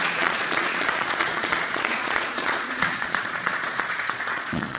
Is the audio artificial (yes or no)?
yes